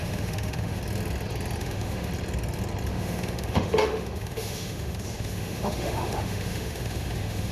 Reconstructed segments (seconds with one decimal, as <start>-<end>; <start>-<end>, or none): 0.0-0.8; 1.6-2.1; 2.9-7.5